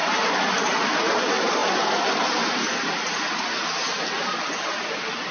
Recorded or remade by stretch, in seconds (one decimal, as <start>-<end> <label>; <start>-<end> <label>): 0.0-5.3 recorded